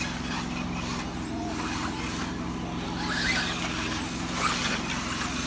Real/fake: real